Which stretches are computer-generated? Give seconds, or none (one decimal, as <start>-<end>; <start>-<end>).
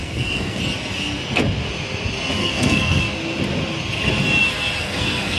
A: 0.0-0.6; 2.4-3.0; 4.8-5.4